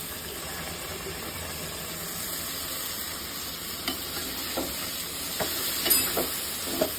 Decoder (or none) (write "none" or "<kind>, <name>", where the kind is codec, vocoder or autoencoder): none